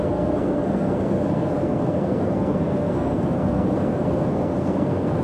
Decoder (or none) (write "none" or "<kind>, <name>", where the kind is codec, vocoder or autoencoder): codec, SNAC